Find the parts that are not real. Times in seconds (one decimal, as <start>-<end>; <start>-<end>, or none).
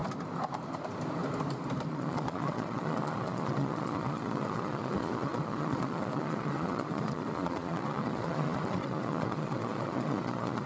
1.9-10.7